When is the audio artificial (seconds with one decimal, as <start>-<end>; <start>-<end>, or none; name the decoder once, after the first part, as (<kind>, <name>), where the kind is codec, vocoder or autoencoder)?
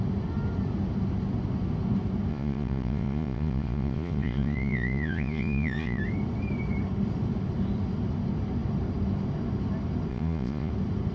2.3-6.0 (vocoder, Vocos); 10.1-10.7